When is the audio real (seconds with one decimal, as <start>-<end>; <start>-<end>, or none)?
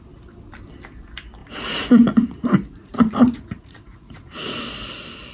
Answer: 0.0-1.4; 4.6-5.3